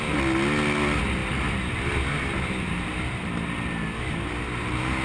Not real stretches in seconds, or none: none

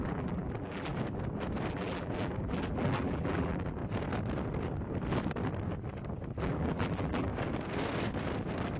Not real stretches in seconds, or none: 0.0-0.9 (vocoder, BigVGAN v2); 1.7-3.8; 6.4-7.3

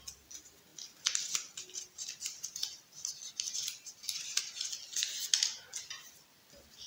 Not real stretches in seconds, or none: none

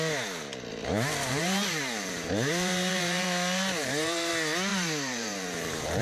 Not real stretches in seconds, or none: 0.7-4.3 (vocoder, BigVGAN v2); 4.7-6.0

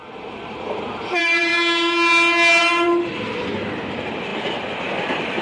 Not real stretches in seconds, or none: 0.0-1.5 (vocoder, BigVGAN v2); 2.6-5.4

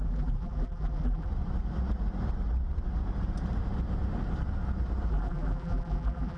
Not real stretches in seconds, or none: 0.0-1.3 (vocoder, BigVGAN v2); 5.1-6.4